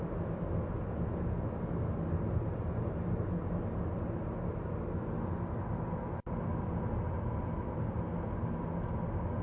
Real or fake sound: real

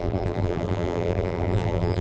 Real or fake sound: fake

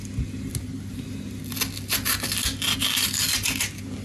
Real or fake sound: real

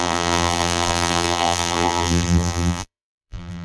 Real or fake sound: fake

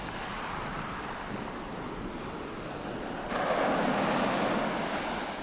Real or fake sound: real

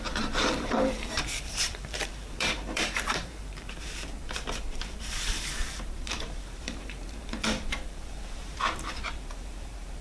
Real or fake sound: fake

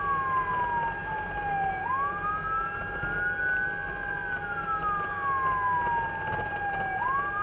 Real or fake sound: real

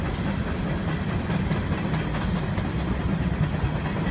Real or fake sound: real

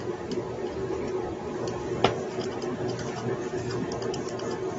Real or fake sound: real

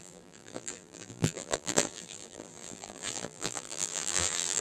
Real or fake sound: fake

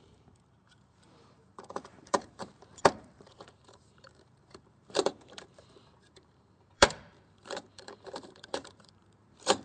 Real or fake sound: fake